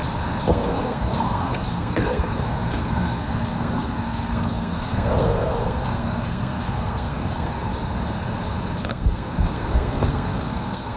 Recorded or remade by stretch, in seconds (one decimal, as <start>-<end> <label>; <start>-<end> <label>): 0.0-0.5 recorded; 0.5-7.7 remade; 7.7-8.8 recorded; 8.8-11.0 remade